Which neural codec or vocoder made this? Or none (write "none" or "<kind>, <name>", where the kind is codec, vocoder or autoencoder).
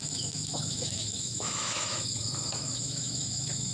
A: autoencoder, DAC-VAE